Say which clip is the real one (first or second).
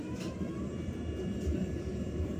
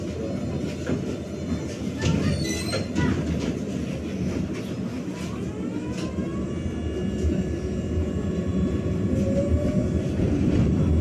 second